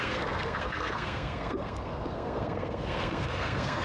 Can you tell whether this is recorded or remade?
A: remade